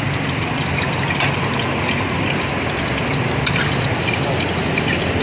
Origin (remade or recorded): recorded